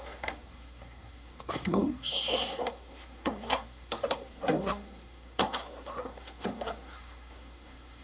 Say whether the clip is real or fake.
fake